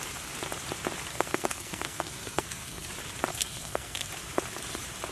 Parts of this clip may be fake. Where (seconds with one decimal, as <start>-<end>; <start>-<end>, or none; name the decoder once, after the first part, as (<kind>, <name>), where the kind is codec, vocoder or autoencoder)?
1.1-2.9 (codec, SNAC); 3.3-4.1